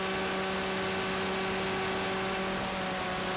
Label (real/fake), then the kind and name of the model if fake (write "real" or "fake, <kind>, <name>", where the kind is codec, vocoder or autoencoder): real